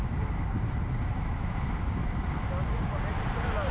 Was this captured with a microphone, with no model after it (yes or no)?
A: yes